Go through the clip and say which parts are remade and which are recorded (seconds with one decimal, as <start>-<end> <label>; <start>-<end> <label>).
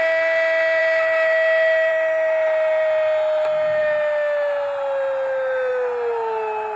0.0-6.8 recorded